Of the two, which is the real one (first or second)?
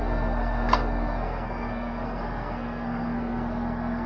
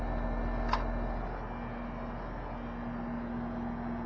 second